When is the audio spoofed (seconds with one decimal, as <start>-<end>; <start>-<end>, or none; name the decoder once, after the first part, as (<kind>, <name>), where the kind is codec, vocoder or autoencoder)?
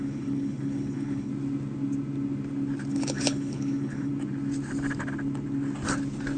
0.0-1.3 (codec, HILCodec); 2.9-4.1